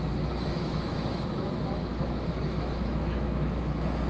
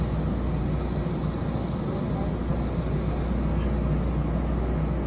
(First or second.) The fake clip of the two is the first